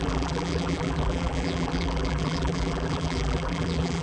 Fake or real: fake